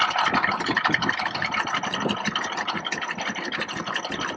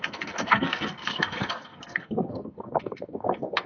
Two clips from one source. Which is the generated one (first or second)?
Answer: second